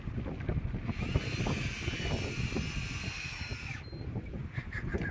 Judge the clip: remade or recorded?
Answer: recorded